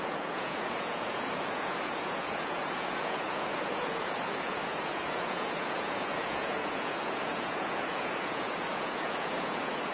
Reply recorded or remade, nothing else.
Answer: remade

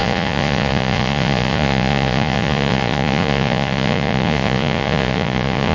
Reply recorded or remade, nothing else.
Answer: remade